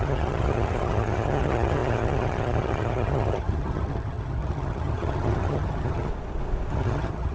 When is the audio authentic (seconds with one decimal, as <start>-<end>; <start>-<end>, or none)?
6.1-6.7

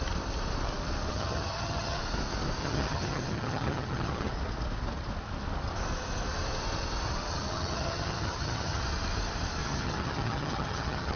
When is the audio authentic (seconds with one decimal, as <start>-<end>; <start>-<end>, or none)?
0.0-1.1; 2.0-2.6; 4.3-7.3; 8.8-9.6